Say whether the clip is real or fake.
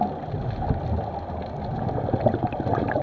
real